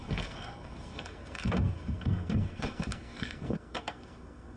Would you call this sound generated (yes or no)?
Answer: yes